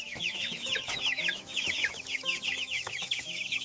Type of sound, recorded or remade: remade